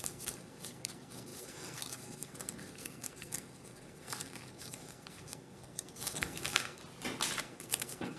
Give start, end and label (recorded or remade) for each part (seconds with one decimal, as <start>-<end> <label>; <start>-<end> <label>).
0.0-6.8 remade; 6.8-7.4 recorded; 7.4-8.2 remade